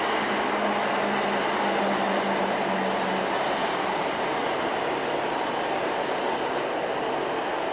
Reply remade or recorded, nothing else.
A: recorded